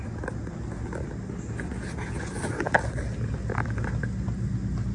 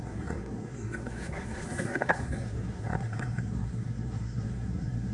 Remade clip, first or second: second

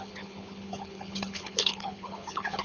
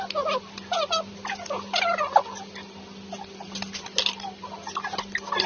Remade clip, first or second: first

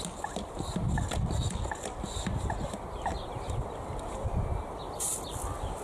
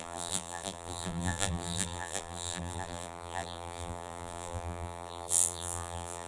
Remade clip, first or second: second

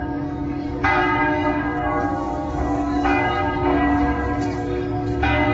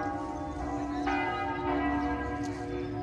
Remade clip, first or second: first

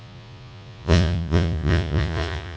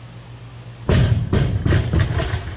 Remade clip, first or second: first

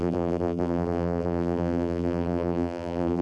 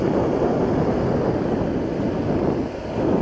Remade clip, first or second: first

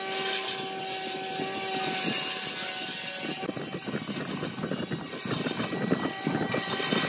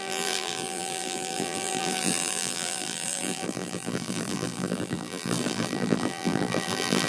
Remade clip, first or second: second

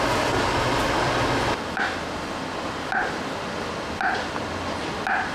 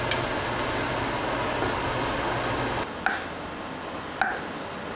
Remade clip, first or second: first